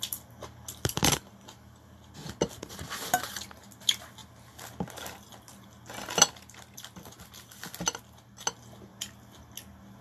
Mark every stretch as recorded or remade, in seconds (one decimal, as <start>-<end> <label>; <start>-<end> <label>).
0.0-10.0 recorded

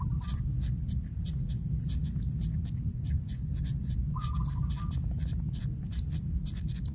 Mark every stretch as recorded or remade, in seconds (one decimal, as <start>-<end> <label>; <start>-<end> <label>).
0.0-2.9 recorded; 2.9-4.7 remade; 4.7-6.9 recorded

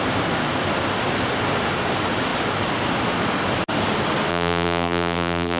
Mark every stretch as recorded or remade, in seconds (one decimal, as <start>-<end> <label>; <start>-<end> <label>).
0.0-4.3 recorded; 4.3-5.6 remade

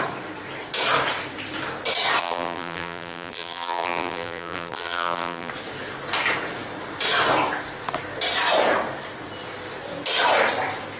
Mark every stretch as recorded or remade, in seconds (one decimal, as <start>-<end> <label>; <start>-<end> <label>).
0.0-2.2 recorded; 2.2-5.5 remade; 5.5-11.0 recorded

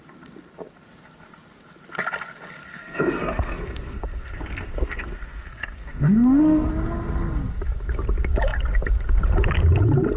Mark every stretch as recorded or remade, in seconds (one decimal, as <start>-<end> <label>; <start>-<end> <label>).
0.0-2.6 recorded; 2.6-6.7 remade; 6.7-10.2 recorded

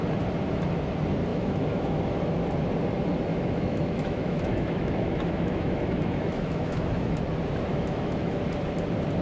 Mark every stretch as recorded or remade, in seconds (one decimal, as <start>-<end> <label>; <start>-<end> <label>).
0.0-1.3 recorded; 1.3-2.0 remade; 2.0-3.3 recorded; 3.3-7.2 remade; 7.2-7.7 recorded; 7.7-8.4 remade; 8.4-9.2 recorded

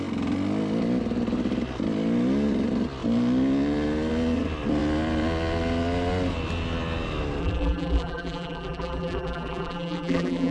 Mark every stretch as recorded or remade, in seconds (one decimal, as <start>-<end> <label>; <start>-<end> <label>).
0.0-7.4 recorded; 7.4-10.5 remade

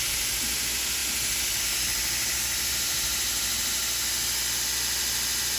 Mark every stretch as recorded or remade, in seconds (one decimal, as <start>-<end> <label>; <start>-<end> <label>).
0.0-5.6 recorded